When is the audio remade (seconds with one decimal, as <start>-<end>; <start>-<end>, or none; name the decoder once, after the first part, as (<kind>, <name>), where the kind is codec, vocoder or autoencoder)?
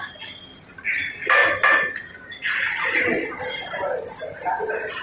none